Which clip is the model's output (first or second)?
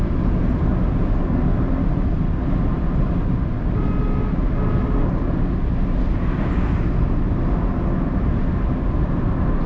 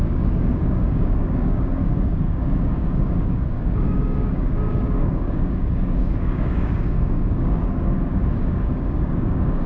second